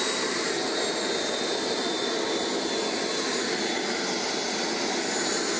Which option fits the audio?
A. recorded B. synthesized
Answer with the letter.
A